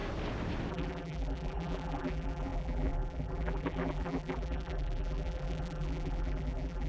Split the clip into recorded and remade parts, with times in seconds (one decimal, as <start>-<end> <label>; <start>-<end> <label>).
0.0-0.7 recorded; 0.7-6.9 remade